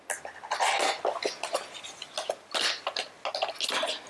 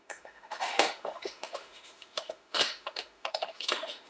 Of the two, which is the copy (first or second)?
second